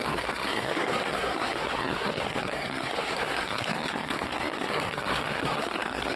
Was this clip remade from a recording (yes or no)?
yes